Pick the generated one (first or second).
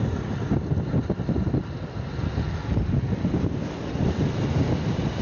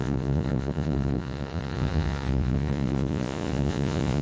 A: second